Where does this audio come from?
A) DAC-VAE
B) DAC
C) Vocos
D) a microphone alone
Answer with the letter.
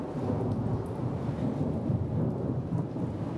D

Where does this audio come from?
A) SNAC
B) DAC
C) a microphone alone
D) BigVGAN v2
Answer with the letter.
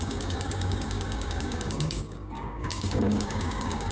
B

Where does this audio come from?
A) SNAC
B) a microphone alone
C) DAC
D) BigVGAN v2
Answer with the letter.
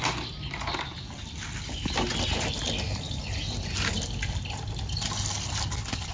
B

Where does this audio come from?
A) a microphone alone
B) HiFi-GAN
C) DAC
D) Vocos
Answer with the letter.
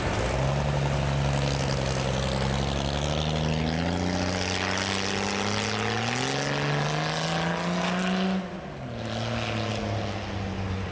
A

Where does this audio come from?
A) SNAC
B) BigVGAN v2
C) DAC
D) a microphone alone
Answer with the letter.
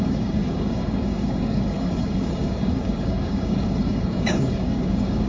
C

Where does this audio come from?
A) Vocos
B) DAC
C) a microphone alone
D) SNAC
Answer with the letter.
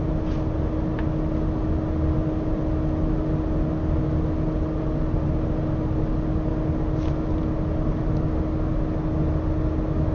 C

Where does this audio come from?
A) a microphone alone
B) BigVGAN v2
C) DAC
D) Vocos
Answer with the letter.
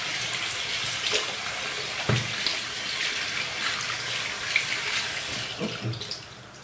A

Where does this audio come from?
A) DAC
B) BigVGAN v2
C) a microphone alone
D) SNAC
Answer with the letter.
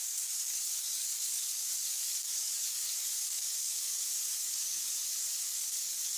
A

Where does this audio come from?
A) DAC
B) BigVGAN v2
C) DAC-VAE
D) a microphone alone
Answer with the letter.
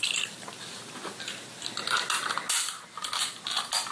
D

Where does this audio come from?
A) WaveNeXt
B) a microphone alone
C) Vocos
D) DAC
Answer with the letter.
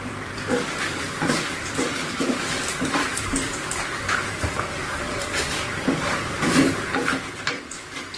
D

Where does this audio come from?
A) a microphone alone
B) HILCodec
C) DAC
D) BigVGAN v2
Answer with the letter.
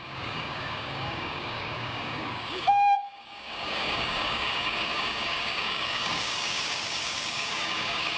C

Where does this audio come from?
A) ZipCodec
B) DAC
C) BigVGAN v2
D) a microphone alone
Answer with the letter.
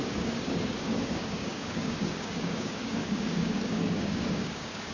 B